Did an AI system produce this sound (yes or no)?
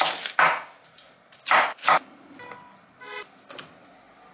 no